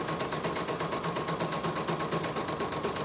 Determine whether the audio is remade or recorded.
recorded